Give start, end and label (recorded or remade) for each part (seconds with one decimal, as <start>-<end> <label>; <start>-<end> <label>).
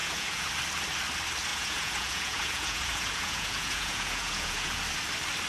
0.0-0.5 remade; 0.5-1.5 recorded; 1.5-4.8 remade; 4.8-5.5 recorded